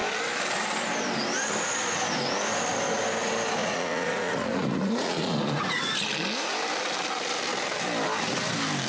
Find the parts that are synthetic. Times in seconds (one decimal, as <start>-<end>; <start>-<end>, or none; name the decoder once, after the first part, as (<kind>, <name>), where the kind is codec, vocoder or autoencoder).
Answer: 3.6-5.9 (vocoder, Vocos)